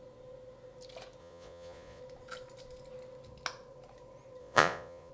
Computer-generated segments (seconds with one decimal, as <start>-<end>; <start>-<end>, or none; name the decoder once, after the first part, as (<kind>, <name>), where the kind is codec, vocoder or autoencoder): 1.2-2.0 (vocoder, Vocos); 4.4-5.1